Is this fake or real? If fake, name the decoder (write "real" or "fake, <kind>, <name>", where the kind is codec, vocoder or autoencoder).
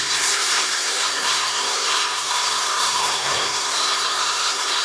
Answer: fake, codec, SNAC